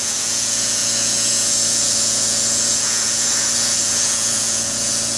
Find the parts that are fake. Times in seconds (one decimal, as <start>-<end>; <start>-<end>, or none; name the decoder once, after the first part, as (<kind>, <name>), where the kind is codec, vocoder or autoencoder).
0.0-5.2 (vocoder, Vocos)